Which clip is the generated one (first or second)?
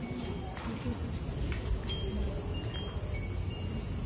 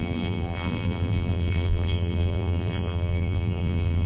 second